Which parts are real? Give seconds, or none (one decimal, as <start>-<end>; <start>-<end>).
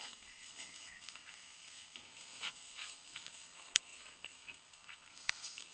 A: none